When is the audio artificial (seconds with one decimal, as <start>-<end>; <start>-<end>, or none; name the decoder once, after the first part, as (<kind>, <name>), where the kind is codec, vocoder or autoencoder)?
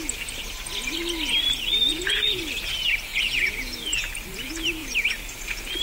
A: 1.9-2.4 (vocoder, Vocos); 3.1-4.1